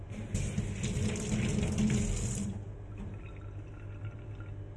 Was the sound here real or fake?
real